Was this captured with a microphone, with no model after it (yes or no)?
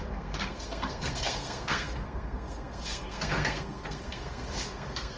no